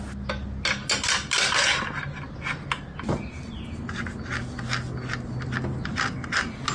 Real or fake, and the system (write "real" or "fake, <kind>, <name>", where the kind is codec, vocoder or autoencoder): real